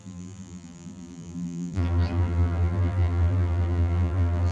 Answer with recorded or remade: remade